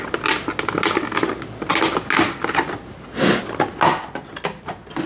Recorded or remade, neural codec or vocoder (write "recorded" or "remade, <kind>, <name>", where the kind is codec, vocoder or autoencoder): recorded